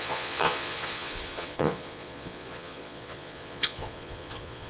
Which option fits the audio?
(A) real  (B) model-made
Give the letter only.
B